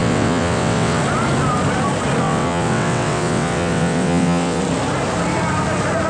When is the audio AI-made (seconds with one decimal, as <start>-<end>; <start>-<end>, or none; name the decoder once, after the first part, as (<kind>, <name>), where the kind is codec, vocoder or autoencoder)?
0.0-1.0 (vocoder, WaveNeXt); 2.2-4.6